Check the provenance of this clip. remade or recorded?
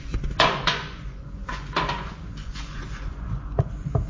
remade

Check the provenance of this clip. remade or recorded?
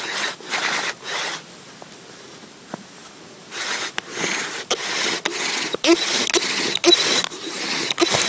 recorded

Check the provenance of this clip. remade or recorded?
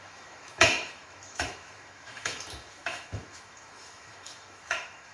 remade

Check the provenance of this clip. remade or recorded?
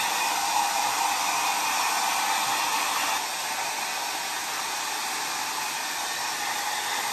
recorded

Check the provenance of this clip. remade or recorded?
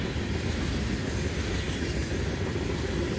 recorded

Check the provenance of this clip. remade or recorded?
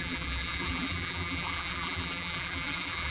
remade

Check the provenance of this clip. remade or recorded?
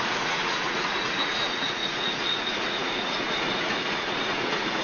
remade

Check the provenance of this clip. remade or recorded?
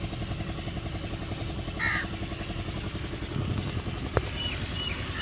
recorded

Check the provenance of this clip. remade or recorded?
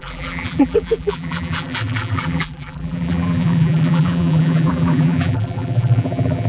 remade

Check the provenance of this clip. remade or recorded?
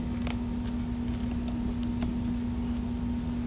recorded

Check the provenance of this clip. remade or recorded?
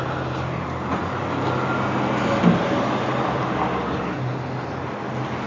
recorded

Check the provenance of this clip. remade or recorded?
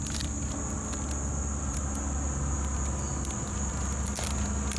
recorded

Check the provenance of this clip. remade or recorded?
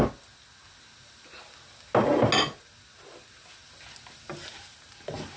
recorded